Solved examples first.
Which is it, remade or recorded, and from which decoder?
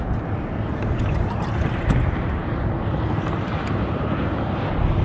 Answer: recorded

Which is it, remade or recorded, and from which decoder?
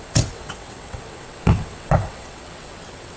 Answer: remade, vocoder, WaveNeXt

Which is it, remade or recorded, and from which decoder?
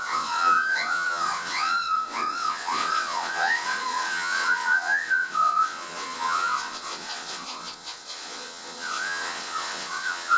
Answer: remade, vocoder, WaveNeXt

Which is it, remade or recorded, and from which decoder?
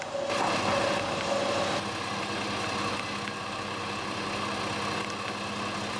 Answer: recorded